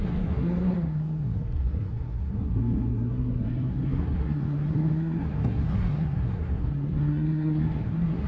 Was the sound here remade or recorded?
remade